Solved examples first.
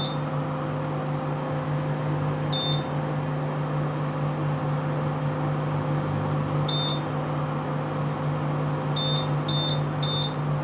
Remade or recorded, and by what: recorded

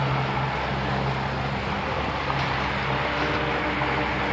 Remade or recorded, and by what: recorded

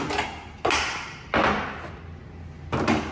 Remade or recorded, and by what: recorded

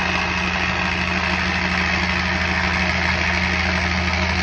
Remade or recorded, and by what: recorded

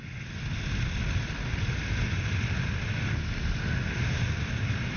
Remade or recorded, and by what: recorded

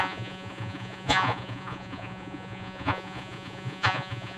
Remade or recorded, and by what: remade, vocoder, Vocos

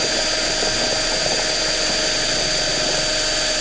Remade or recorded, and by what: recorded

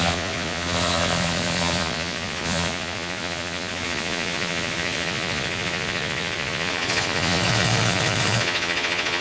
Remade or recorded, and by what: remade, vocoder, Vocos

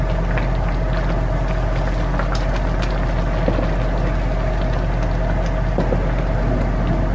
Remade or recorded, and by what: recorded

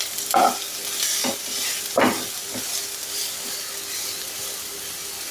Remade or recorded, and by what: recorded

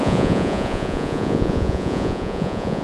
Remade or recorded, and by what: remade, vocoder, Vocos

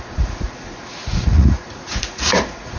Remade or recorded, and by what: remade, vocoder, Vocos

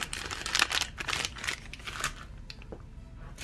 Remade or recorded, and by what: recorded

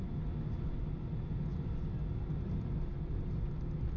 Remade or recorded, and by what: recorded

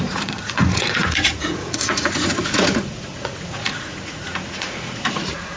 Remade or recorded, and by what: remade, vocoder, Vocos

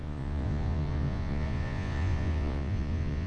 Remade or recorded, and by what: remade, vocoder, Vocos